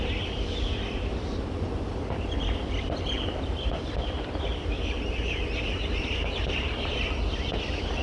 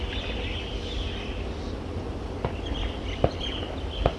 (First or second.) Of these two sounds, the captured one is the second